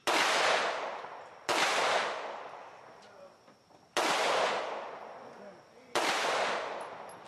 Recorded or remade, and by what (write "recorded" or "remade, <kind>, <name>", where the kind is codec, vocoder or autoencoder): recorded